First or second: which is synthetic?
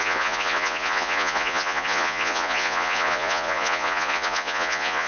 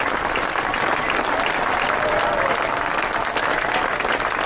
first